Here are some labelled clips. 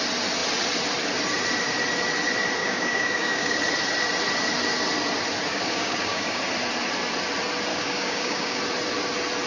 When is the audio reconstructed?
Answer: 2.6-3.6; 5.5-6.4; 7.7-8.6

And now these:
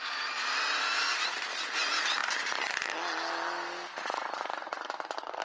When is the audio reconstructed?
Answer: none

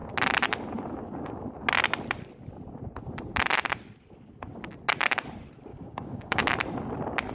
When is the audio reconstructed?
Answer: 5.7-6.5